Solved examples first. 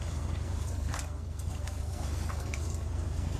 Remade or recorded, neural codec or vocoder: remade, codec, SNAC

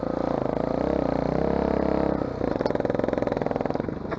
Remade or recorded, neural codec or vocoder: recorded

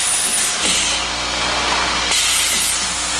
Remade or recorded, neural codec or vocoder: recorded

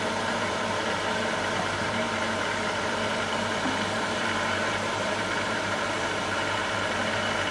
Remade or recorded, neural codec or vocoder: remade, vocoder, BigVGAN v2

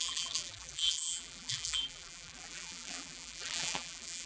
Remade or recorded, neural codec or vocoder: remade, vocoder, BigVGAN v2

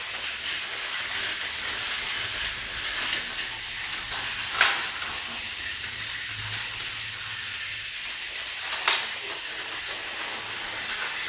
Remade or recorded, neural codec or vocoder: recorded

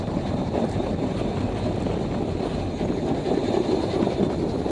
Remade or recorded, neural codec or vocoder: recorded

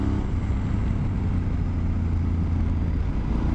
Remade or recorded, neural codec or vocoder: recorded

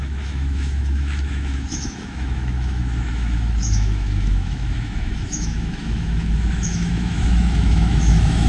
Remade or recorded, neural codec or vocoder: remade, autoencoder, DAC-VAE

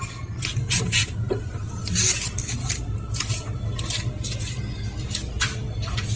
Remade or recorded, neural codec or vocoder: recorded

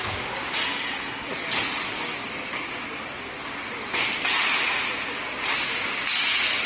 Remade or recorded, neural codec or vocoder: recorded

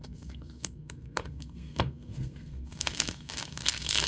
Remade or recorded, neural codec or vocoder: remade, codec, SNAC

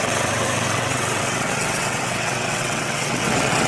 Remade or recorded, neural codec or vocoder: remade, vocoder, WaveNeXt